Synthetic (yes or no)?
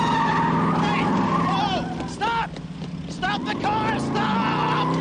no